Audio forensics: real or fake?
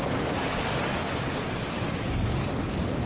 fake